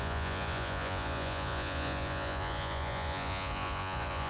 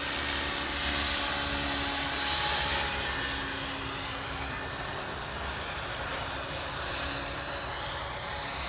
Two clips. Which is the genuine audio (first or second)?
second